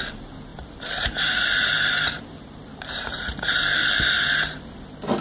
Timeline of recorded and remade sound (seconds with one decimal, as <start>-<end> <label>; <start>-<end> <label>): 0.0-0.5 recorded; 0.5-3.6 remade; 3.6-5.2 recorded